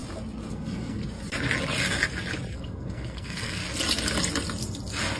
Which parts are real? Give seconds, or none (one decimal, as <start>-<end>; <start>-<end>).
0.0-0.5; 1.0-2.5; 3.6-5.2